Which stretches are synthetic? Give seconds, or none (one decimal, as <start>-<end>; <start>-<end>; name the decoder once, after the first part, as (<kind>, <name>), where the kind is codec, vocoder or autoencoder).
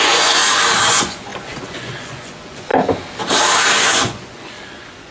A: 0.0-0.4 (vocoder, Vocos); 0.9-2.7; 3.8-5.1